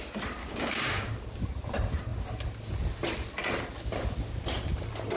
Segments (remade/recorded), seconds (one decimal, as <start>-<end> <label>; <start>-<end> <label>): 0.0-0.4 recorded; 0.4-1.1 remade; 1.1-5.2 recorded